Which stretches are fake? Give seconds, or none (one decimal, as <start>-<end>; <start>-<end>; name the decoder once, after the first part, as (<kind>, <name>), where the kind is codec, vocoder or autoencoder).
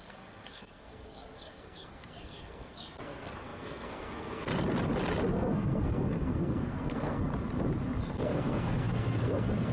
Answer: 0.0-4.5 (codec, SNAC); 5.3-7.3; 8.0-9.7